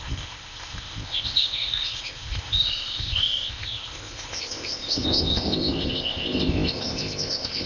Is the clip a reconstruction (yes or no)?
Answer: yes